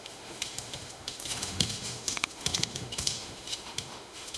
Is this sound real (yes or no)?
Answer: no